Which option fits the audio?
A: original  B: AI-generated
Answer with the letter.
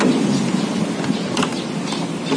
A